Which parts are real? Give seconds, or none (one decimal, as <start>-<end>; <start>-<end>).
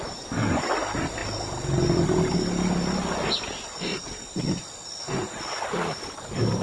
0.0-6.6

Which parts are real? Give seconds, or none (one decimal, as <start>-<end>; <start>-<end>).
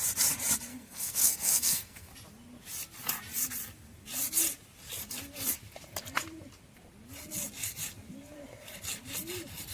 0.0-0.7; 2.1-9.7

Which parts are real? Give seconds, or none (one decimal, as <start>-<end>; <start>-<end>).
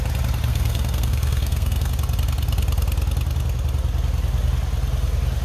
0.0-0.5; 1.9-5.4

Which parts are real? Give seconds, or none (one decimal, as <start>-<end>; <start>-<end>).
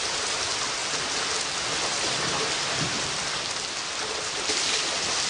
0.0-5.3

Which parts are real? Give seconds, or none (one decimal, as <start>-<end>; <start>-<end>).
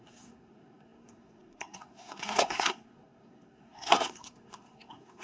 none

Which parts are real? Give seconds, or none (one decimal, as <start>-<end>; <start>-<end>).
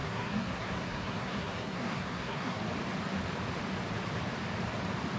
2.6-5.2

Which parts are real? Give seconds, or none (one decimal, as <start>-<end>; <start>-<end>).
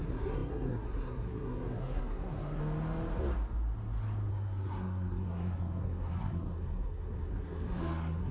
2.6-4.3